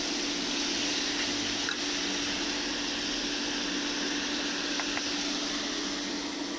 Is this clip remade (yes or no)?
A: no